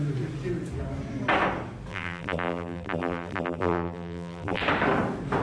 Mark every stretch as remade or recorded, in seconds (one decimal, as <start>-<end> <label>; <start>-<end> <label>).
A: 0.0-1.9 recorded; 1.9-4.6 remade; 4.6-5.4 recorded